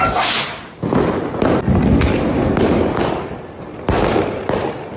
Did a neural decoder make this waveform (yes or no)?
no